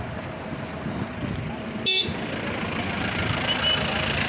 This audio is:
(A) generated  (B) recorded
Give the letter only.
B